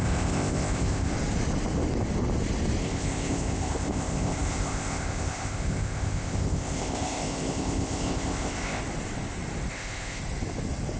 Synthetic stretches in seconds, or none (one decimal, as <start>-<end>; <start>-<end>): 0.0-1.1; 2.8-8.8; 9.7-10.2